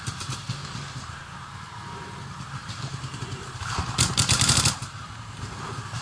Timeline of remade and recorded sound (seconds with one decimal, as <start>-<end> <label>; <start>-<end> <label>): 0.0-0.6 remade; 0.6-3.2 recorded; 3.2-6.0 remade